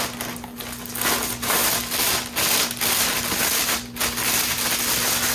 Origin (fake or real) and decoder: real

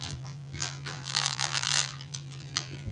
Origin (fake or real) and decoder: fake, vocoder, BigVGAN v2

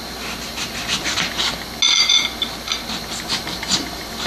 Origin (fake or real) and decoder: real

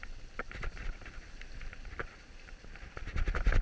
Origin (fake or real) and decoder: real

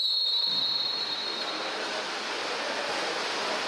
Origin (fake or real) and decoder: real